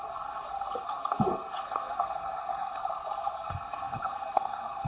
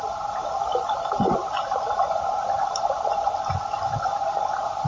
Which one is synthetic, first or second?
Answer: first